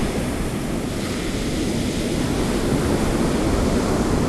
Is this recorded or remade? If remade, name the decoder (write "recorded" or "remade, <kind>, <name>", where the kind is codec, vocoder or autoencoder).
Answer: recorded